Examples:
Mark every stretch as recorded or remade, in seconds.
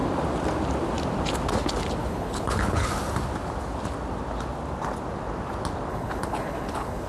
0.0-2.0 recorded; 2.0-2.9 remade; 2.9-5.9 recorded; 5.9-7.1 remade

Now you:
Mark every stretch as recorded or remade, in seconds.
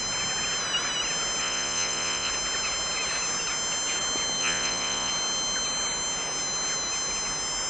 0.0-1.4 recorded; 1.4-2.3 remade; 2.3-4.4 recorded; 4.4-5.1 remade; 5.1-7.7 recorded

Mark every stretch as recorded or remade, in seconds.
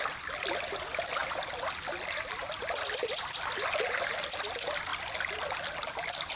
0.0-6.4 recorded